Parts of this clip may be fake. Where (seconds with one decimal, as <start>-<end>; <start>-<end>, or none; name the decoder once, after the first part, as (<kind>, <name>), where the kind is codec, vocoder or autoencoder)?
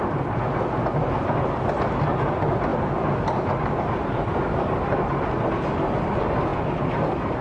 none